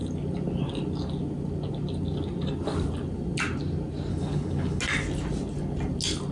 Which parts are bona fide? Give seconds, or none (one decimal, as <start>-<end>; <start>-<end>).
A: 0.0-4.1; 4.8-6.3